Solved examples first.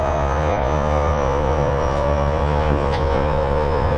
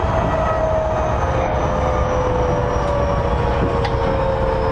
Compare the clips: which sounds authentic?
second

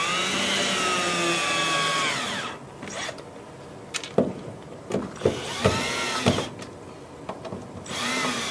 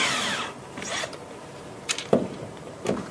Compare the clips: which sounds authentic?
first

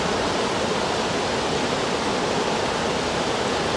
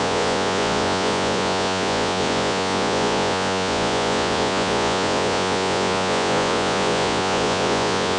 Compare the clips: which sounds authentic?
first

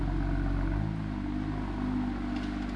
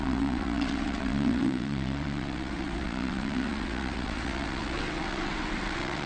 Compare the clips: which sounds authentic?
first